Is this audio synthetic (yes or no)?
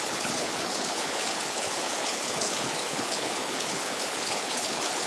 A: yes